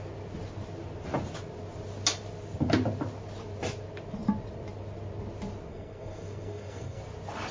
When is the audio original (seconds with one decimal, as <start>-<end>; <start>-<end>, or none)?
0.0-5.7; 7.0-7.5